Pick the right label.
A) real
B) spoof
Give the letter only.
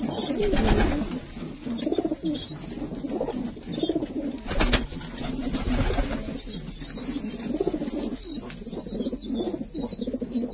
A